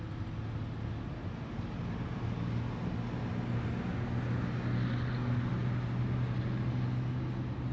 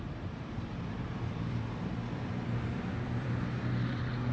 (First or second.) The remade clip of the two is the second